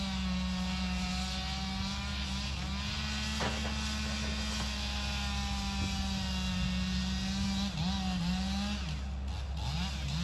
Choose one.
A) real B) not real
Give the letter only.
A